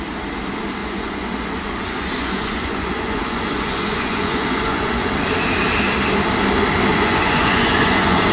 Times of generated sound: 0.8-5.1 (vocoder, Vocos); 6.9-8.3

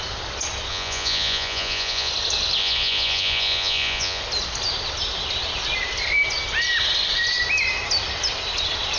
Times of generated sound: 0.7-2.1 (vocoder, Vocos); 2.6-4.2

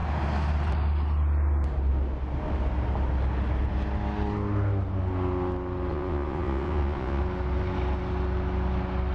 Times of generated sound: 5.9-7.2 (vocoder, Vocos)

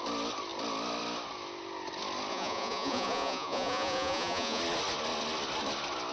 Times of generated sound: 2.3-4.6 (vocoder, Vocos)

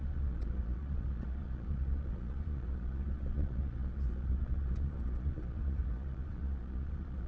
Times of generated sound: 0.0-7.3 (vocoder, Vocos)

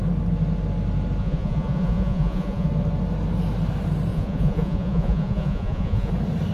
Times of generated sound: 1.2-2.7 (vocoder, Vocos); 4.1-6.1

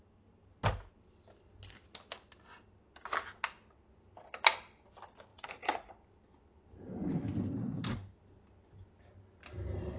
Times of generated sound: 5.3-5.9 (vocoder, Vocos)

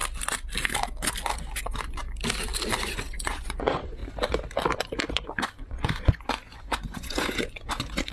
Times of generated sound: 1.6-2.0 (vocoder, Vocos); 2.8-4.0; 5.1-8.1